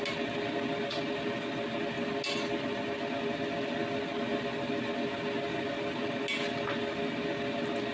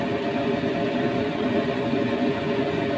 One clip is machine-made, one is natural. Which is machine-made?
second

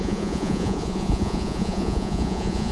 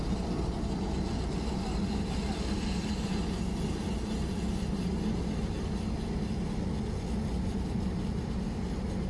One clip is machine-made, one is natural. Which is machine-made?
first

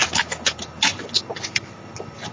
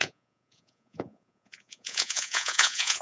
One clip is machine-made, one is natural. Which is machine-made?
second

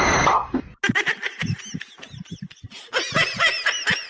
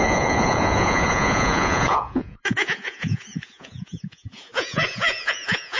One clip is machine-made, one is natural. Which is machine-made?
second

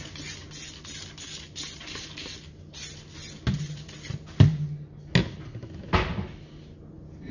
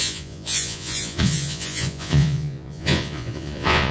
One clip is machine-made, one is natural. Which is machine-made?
second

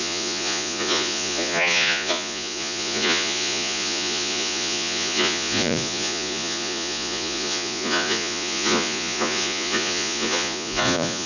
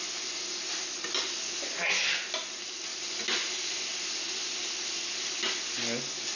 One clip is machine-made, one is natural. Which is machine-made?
first